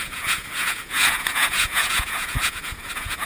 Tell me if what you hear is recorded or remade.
remade